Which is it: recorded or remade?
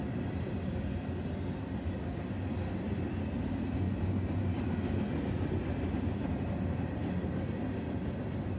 recorded